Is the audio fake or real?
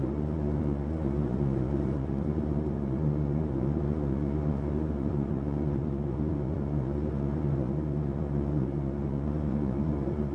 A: fake